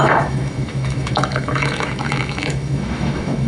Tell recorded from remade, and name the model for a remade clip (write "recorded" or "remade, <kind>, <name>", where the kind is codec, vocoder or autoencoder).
remade, autoencoder, DAC-VAE